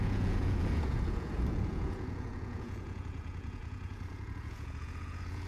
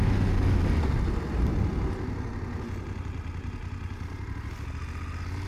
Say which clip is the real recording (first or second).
second